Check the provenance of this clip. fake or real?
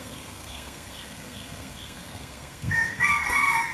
fake